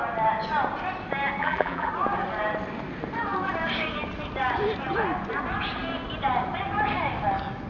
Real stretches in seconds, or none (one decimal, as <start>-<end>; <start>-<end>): 0.0-1.4; 1.9-7.7